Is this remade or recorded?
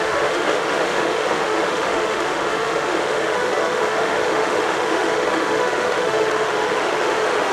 remade